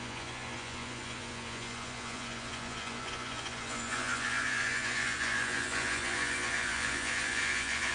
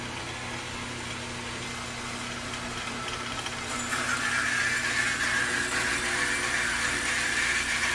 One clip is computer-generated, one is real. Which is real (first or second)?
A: second